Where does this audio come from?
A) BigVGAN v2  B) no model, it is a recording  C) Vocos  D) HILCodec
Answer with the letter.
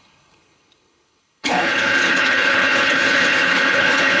D